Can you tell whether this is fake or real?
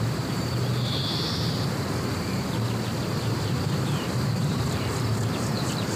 fake